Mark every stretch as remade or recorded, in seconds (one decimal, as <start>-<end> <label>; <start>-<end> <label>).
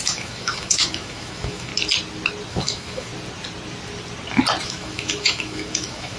0.0-1.7 remade; 1.7-2.5 recorded; 2.5-3.1 remade; 3.1-4.6 recorded; 4.6-6.2 remade